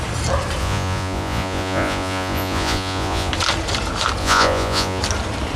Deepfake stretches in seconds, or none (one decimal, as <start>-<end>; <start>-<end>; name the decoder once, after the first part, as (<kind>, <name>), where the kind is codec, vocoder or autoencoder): 0.6-3.3 (vocoder, Vocos); 4.2-5.0